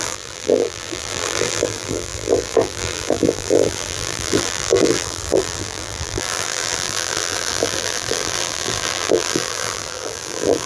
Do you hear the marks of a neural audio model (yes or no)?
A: yes